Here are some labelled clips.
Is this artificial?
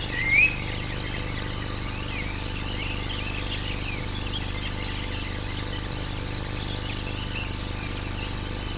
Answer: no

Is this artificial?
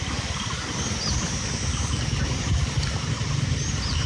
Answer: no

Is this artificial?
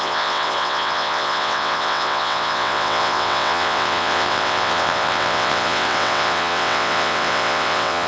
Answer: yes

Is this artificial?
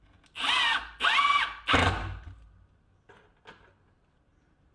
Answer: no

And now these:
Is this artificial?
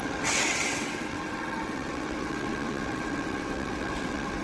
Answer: yes